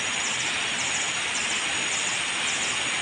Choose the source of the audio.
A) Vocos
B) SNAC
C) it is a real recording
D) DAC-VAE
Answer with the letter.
C